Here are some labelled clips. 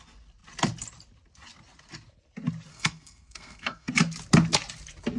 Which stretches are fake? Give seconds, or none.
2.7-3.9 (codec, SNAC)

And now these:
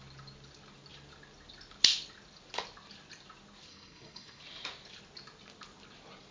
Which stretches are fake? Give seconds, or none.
3.7-4.4 (codec, SNAC)